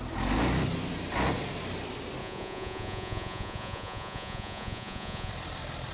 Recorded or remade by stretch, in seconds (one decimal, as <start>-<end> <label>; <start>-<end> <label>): 0.0-2.2 recorded; 2.2-5.3 remade; 5.3-5.9 recorded

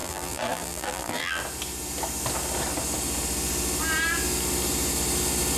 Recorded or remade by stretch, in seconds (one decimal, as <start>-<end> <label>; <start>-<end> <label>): 0.0-1.4 remade; 1.4-5.6 recorded

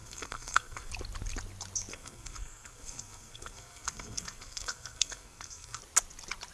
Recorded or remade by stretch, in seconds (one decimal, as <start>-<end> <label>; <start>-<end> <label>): 0.0-0.9 remade; 0.9-1.9 recorded; 1.9-5.8 remade; 5.8-6.5 recorded